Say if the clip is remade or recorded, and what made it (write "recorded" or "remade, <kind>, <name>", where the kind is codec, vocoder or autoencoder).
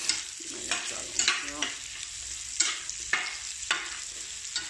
recorded